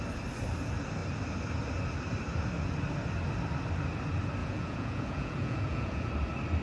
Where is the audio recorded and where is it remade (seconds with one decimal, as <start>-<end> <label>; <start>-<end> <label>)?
0.0-4.4 recorded; 4.4-6.1 remade; 6.1-6.6 recorded